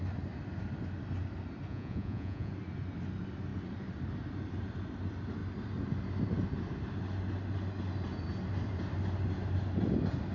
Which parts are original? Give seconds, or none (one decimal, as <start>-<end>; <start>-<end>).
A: 0.0-1.7; 2.5-10.3